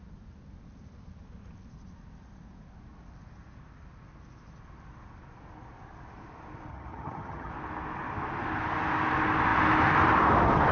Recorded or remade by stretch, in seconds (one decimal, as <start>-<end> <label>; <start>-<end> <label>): 0.0-6.7 recorded; 6.7-7.5 remade; 7.5-10.7 recorded

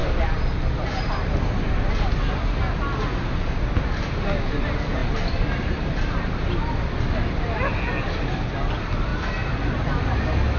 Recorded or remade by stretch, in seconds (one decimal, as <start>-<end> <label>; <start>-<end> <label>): 0.0-10.6 recorded

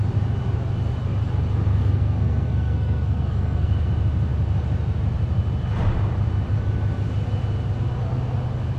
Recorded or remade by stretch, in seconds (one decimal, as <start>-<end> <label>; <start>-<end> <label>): 0.0-1.8 recorded; 1.8-3.9 remade; 3.9-8.8 recorded